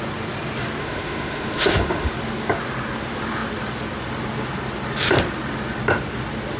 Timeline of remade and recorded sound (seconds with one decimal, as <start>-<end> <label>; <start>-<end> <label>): 0.0-0.8 recorded; 0.8-2.1 remade; 2.1-6.6 recorded